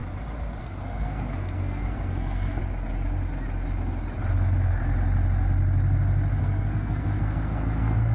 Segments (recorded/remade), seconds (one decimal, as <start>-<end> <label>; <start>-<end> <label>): 0.0-0.6 recorded; 0.6-2.6 remade; 2.6-6.4 recorded; 6.4-8.1 remade